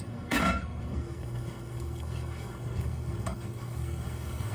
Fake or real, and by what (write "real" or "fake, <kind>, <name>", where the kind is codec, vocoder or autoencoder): fake, codec, SNAC